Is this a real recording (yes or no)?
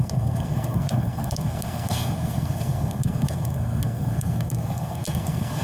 no